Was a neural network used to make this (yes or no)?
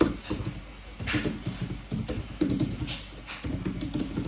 no